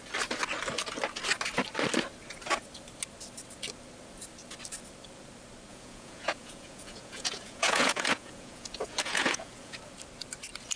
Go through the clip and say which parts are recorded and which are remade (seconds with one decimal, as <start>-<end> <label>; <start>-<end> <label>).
0.0-5.7 recorded; 5.7-9.8 remade; 9.8-10.8 recorded